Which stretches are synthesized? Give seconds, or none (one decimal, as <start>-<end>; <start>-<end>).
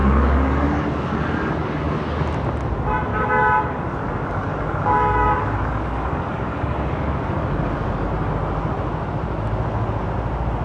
0.0-2.2; 3.1-8.1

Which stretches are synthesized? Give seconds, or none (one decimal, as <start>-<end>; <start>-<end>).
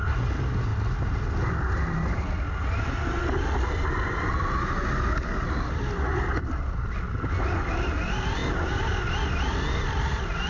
none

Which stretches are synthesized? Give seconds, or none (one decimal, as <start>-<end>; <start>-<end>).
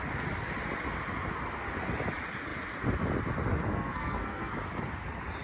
3.7-4.5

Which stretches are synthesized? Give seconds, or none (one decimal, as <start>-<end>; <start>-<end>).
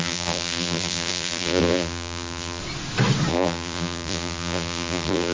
0.0-2.6; 3.3-5.3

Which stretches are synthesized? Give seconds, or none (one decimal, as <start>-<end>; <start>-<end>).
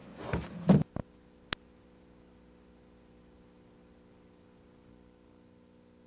none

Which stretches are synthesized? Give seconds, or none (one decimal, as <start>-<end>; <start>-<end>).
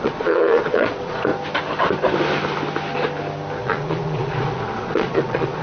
0.0-1.3; 3.6-5.6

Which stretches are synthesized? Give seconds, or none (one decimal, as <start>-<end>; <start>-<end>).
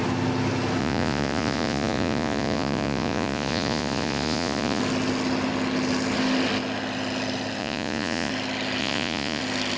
0.8-4.8; 7.6-8.3; 8.8-9.4